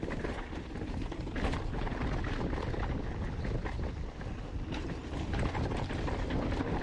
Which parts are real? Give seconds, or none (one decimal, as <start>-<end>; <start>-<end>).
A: none